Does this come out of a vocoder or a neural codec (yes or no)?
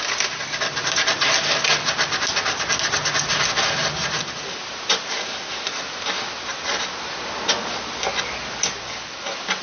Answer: no